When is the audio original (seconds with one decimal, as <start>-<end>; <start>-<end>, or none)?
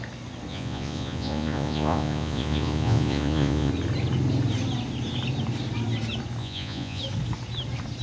0.0-0.5; 3.7-6.4; 7.0-8.0